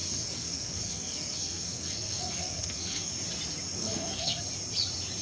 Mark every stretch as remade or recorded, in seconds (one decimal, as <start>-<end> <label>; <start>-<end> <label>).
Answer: 0.0-3.1 remade; 3.1-3.8 recorded; 3.8-4.4 remade; 4.4-5.2 recorded